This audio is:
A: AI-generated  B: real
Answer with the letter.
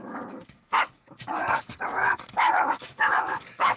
A